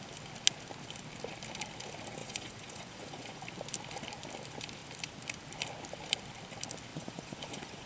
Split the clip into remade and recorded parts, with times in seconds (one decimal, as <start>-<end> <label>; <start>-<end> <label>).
0.0-2.2 recorded; 2.2-3.4 remade; 3.4-6.9 recorded; 6.9-7.9 remade